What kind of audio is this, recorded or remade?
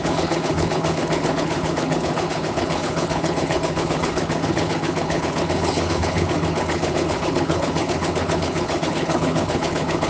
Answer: remade